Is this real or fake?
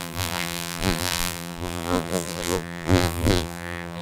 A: fake